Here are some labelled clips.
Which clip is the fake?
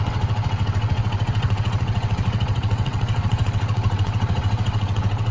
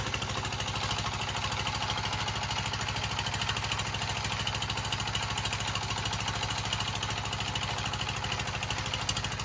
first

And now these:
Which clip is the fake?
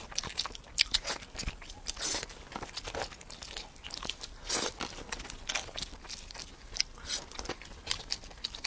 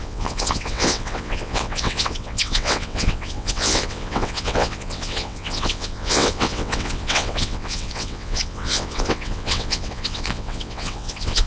second